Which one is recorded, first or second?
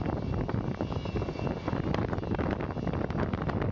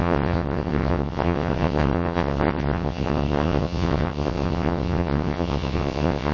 first